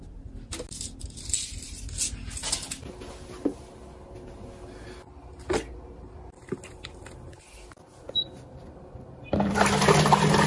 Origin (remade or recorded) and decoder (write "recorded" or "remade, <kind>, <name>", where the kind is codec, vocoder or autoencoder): recorded